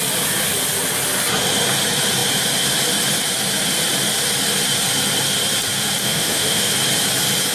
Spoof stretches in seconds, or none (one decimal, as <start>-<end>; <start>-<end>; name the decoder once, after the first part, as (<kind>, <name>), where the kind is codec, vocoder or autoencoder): 6.0-6.7 (autoencoder, DAC-VAE)